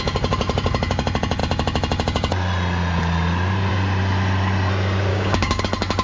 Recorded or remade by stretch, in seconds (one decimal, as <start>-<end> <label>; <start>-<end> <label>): 0.0-5.1 recorded; 5.1-5.6 remade; 5.6-6.0 recorded